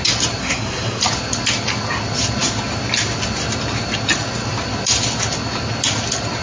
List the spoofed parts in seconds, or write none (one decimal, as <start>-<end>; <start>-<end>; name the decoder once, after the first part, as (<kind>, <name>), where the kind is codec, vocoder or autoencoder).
0.4-1.0 (codec, SNAC)